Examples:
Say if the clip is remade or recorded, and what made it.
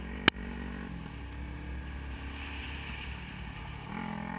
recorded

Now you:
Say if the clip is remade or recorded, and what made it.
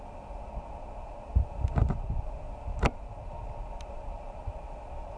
recorded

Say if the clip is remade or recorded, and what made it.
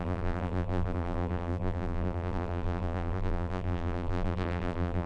remade, vocoder, BigVGAN v2